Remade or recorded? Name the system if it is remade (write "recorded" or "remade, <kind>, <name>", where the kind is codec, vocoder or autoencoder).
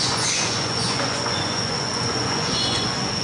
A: remade, vocoder, Vocos